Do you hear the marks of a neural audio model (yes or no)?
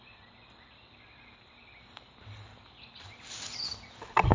no